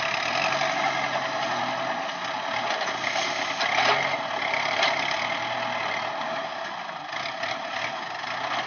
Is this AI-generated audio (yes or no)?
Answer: no